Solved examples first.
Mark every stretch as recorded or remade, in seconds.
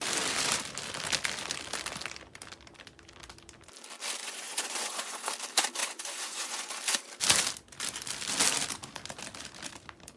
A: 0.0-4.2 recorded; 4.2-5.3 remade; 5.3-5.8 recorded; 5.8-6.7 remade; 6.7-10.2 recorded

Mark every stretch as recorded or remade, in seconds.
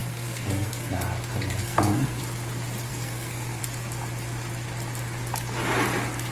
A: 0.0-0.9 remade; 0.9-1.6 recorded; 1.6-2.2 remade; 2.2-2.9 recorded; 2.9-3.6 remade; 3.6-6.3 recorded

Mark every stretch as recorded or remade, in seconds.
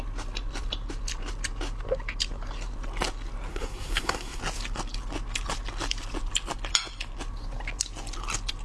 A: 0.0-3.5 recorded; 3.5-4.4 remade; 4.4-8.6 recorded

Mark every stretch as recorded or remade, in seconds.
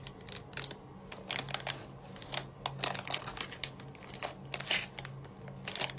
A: 0.0-6.0 recorded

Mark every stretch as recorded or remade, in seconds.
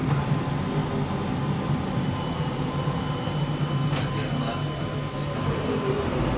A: 0.0-6.4 recorded